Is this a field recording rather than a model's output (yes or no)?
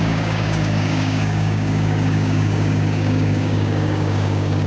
no